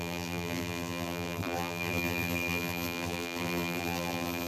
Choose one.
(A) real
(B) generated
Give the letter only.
B